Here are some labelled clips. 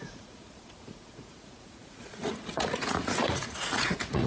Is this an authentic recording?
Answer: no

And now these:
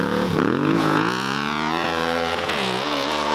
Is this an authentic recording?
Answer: no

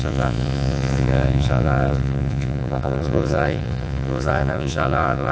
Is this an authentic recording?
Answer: no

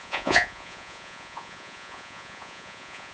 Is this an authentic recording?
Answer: no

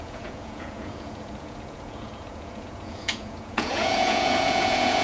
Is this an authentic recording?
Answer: no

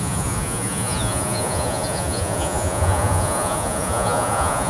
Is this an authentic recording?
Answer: no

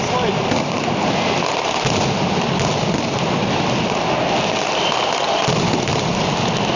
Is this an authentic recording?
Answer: yes